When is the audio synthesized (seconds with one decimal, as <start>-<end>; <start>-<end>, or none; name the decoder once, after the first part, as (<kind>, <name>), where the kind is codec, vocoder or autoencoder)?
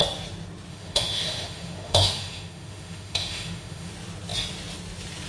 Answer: 0.7-3.9 (autoencoder, DAC-VAE)